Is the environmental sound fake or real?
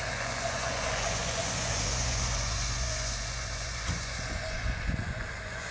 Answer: fake